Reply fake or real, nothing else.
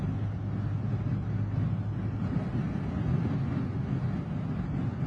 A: real